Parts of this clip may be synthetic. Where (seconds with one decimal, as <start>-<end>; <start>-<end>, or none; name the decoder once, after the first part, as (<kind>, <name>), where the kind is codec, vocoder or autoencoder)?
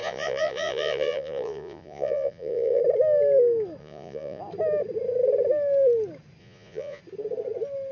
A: 0.0-2.8 (vocoder, Vocos); 3.8-4.4; 6.4-7.0